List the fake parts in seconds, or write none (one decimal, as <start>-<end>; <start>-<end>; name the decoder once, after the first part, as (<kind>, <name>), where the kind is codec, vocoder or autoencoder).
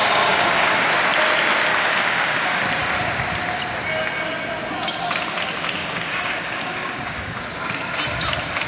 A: 0.0-0.9 (codec, DAC); 1.7-2.6; 5.8-7.4